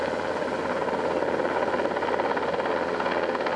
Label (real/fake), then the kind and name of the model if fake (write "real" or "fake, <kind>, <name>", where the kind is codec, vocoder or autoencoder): real